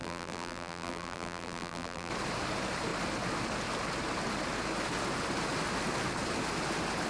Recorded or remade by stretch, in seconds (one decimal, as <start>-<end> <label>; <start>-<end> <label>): 0.0-2.1 remade; 2.1-7.1 recorded